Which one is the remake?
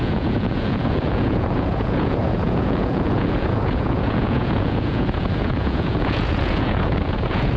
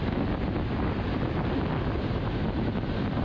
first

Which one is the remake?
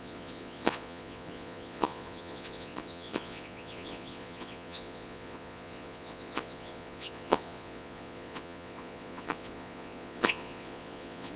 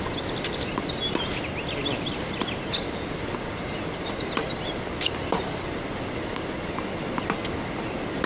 first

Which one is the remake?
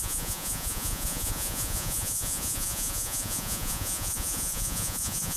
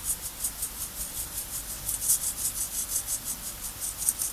first